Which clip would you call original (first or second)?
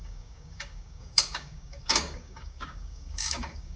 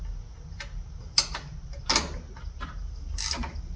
second